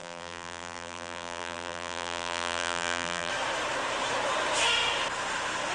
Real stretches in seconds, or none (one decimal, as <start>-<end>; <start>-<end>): 3.3-5.7